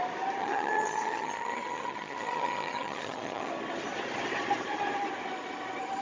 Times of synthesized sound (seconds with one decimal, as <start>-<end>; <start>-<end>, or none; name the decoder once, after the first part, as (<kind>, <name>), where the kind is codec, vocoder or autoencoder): 0.4-3.5 (vocoder, HiFi-GAN)